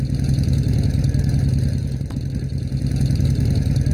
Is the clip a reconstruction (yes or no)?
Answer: no